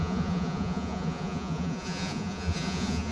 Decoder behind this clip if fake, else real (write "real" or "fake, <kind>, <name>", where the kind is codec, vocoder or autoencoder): fake, vocoder, Vocos